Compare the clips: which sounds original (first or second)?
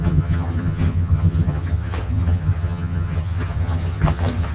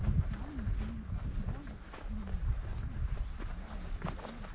second